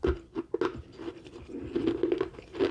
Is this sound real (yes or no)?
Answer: yes